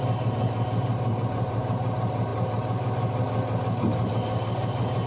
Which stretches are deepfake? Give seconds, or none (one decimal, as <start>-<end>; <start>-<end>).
none